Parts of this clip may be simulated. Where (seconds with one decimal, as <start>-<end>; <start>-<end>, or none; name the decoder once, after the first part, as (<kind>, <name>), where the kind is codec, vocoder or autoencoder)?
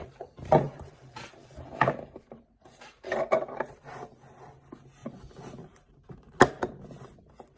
none